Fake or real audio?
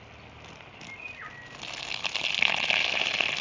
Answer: real